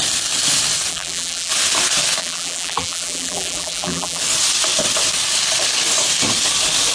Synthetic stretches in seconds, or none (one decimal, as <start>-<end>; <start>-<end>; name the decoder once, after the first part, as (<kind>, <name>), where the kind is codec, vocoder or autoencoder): 0.9-1.5 (vocoder, BigVGAN v2); 2.2-4.2